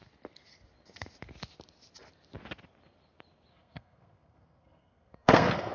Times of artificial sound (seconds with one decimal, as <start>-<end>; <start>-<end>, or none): 3.5-5.7